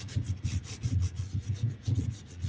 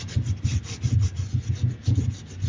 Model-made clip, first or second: first